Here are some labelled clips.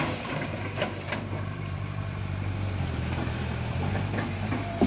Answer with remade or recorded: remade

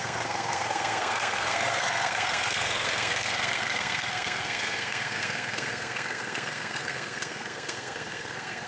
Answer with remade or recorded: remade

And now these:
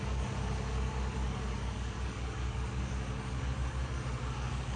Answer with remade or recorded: remade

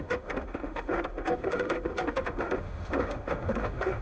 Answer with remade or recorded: remade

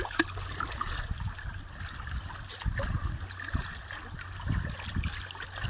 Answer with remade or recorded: recorded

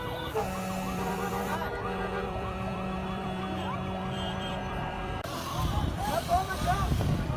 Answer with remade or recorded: remade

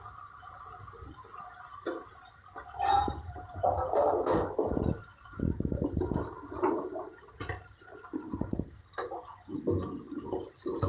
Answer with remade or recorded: recorded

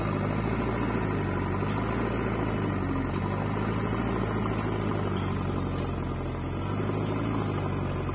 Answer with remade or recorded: recorded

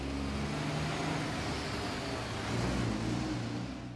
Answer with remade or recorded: recorded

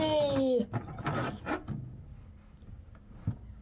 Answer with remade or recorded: recorded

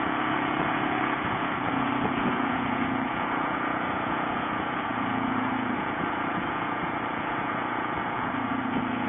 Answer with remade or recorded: remade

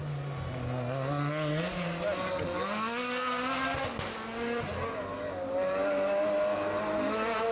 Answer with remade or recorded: recorded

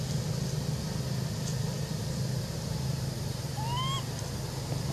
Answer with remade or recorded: recorded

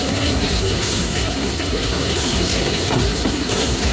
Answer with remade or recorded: remade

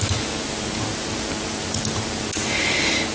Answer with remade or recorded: recorded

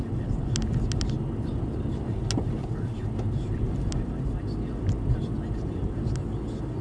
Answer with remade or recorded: recorded